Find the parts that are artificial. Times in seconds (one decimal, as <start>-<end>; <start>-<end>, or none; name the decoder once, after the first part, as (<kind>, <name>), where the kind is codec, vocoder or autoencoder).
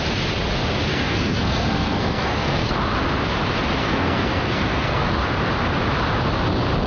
0.9-2.7 (codec, SNAC); 3.8-5.1